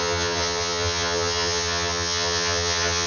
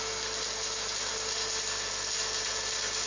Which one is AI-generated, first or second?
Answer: first